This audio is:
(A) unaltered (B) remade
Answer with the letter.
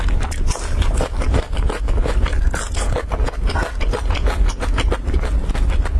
A